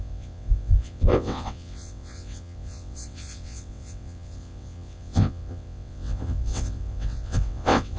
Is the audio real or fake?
fake